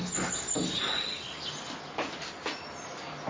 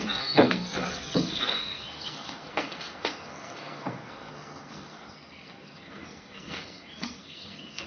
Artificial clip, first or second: second